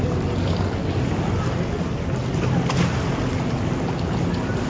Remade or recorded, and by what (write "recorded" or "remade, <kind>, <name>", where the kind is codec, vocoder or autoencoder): recorded